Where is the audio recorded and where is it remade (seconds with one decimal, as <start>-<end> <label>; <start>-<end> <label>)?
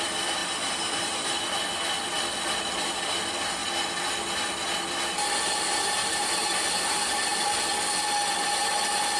0.0-0.4 recorded; 0.4-1.4 remade; 1.4-6.0 recorded; 6.0-6.8 remade; 6.8-9.2 recorded